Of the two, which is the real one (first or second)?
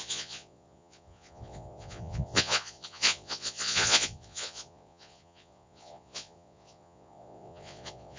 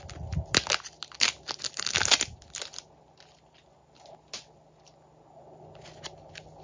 second